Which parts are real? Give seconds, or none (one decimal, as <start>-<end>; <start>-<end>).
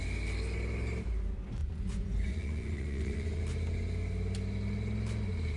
0.0-1.6; 3.4-5.6